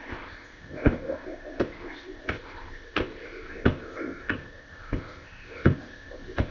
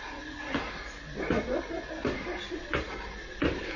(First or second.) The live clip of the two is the second